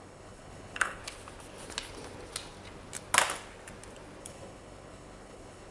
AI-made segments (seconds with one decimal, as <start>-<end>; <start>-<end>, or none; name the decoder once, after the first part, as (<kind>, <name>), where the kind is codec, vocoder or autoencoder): 0.0-1.0 (codec, HILCodec); 4.2-5.7